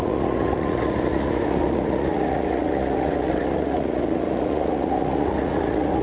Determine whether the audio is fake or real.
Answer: fake